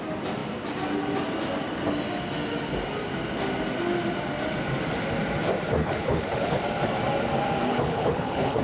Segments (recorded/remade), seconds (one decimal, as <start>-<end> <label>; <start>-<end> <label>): 0.0-5.8 recorded; 5.8-6.6 remade; 6.6-7.7 recorded; 7.7-8.6 remade